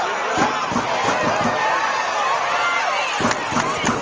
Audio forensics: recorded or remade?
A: recorded